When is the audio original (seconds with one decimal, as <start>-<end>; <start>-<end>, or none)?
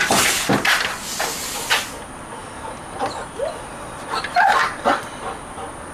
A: 0.0-5.9